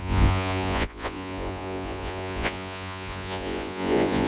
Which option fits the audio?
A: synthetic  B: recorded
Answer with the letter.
A